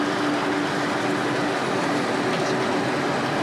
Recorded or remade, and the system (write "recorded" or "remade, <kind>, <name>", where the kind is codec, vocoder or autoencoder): recorded